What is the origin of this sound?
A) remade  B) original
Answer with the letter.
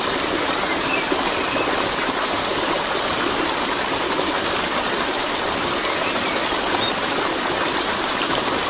A